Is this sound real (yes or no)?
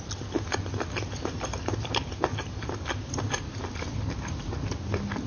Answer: yes